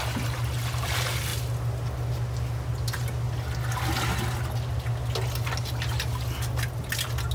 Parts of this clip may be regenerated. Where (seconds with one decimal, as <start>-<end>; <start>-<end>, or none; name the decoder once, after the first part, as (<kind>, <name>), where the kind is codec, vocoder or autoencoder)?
none